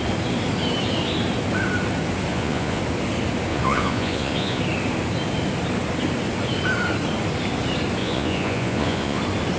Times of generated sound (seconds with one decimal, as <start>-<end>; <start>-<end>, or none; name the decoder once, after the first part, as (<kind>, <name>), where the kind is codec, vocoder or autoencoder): 2.3-2.8 (vocoder, Vocos); 3.5-4.6; 8.0-9.2